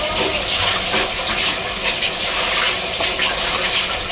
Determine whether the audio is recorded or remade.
recorded